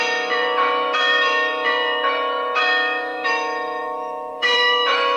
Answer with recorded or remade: remade